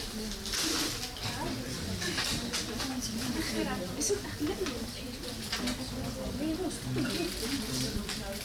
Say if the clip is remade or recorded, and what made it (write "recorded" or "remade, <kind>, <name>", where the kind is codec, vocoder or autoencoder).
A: recorded